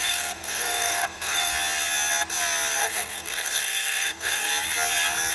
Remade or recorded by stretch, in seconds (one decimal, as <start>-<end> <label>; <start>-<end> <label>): 0.0-1.5 remade; 1.5-2.8 recorded; 2.8-4.5 remade; 4.5-5.3 recorded